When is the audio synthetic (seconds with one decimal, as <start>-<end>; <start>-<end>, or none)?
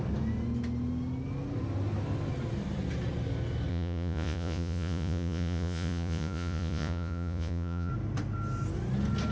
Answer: 3.7-7.9